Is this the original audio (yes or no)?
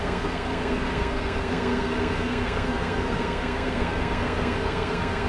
no